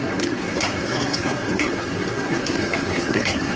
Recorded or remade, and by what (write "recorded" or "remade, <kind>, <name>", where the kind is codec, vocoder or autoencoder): remade, codec, SNAC